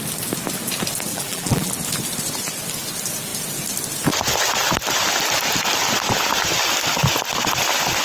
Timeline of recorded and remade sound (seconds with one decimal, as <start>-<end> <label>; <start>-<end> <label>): 0.0-1.1 recorded; 1.1-1.7 remade; 1.7-8.0 recorded